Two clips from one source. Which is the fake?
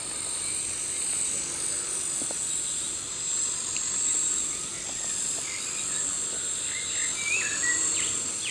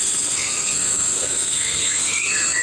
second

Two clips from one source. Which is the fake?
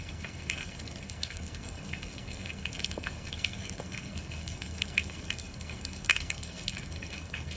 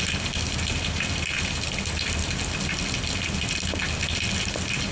first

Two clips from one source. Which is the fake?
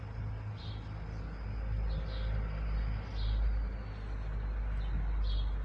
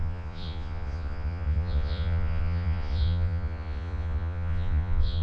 second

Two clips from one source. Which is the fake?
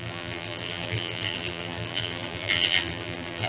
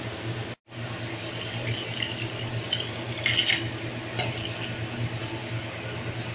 first